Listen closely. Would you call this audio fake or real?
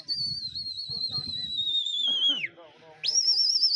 real